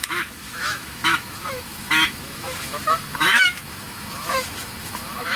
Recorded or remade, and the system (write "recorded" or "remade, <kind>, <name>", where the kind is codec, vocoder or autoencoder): remade, autoencoder, DAC-VAE